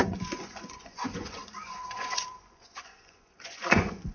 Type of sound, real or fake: fake